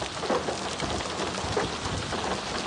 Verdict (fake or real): real